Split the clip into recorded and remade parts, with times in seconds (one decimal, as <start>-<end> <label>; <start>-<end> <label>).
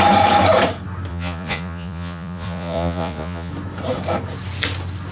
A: 0.0-1.1 recorded; 1.1-3.5 remade; 3.5-5.1 recorded